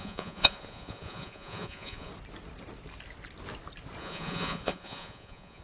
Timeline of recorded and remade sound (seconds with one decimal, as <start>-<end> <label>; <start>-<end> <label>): 0.0-2.1 remade; 2.1-4.0 recorded; 4.0-5.6 remade